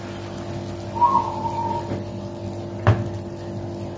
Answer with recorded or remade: recorded